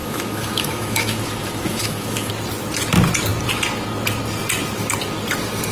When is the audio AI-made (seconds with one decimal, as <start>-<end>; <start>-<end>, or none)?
0.0-2.3